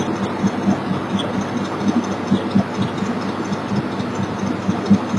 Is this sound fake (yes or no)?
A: no